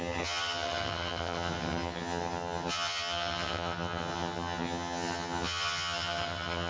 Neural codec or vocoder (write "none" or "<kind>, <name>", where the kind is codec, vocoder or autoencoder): vocoder, HiFi-GAN